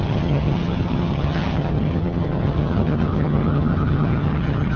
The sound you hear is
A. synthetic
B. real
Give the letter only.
A